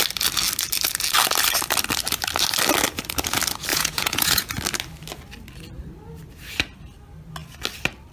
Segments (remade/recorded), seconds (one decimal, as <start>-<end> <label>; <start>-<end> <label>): 0.0-3.7 recorded; 3.7-4.5 remade; 4.5-8.1 recorded